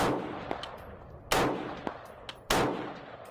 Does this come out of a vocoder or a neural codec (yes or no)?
no